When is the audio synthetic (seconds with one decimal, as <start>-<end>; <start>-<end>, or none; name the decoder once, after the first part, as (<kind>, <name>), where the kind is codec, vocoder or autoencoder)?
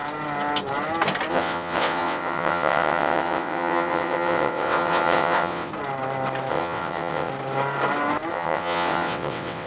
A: 1.3-5.7 (vocoder, WaveNeXt); 6.5-7.3; 8.3-9.7